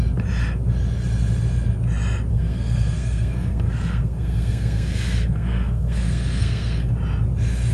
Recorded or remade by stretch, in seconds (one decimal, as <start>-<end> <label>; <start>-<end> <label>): 0.0-2.3 recorded; 2.3-6.9 remade; 6.9-7.7 recorded